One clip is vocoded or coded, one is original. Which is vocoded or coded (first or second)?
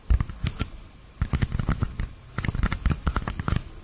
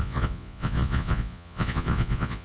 second